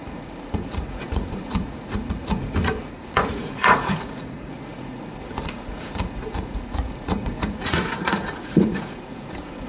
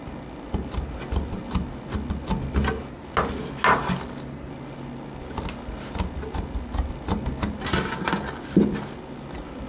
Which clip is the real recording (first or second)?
second